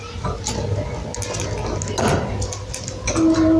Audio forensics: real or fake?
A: real